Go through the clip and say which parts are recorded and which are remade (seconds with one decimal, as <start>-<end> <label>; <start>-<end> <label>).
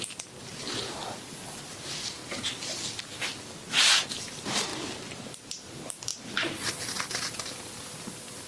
0.0-1.0 remade; 1.0-1.8 recorded; 1.8-2.2 remade; 2.2-4.1 recorded; 4.1-4.7 remade; 4.7-5.2 recorded; 5.2-6.1 remade; 6.1-7.1 recorded; 7.1-8.5 remade